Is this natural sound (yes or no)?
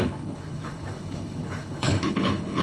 no